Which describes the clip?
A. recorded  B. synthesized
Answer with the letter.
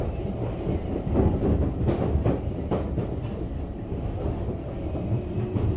A